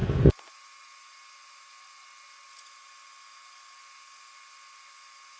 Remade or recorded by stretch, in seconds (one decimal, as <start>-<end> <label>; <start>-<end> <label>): 0.0-5.4 recorded